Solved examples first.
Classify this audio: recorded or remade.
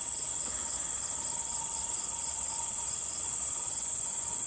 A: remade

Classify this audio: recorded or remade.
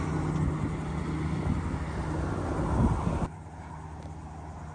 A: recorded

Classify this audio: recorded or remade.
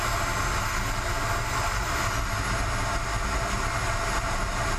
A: recorded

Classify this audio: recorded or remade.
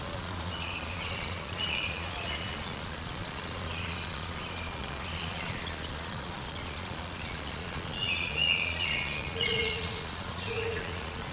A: remade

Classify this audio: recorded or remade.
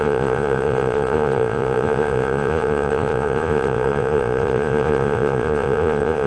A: remade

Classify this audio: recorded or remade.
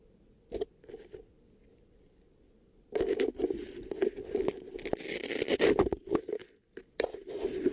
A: recorded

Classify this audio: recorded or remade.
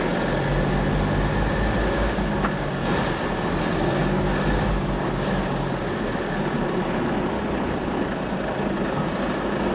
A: recorded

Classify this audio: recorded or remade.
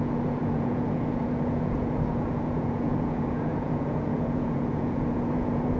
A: remade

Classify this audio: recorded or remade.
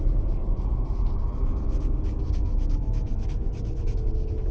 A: recorded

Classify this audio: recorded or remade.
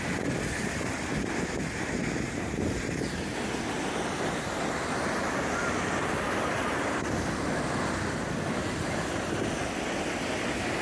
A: recorded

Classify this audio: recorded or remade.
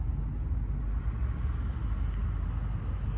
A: recorded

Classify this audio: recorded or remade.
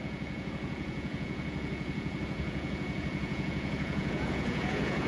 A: remade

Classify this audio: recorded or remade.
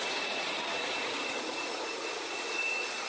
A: remade